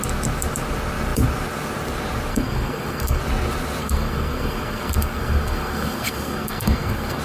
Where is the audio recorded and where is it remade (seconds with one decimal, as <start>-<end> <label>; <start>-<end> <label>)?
0.0-2.3 recorded; 2.3-3.2 remade; 3.2-3.8 recorded; 3.8-7.2 remade